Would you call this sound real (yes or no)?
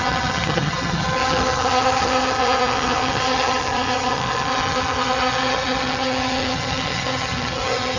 no